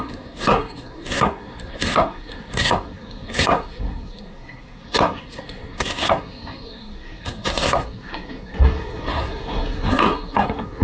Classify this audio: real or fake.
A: fake